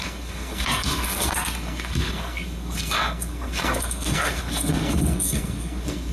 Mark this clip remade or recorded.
remade